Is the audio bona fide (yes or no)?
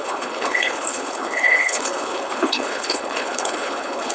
no